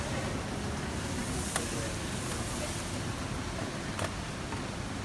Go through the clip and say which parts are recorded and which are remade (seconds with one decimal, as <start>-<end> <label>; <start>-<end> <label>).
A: 0.0-5.0 recorded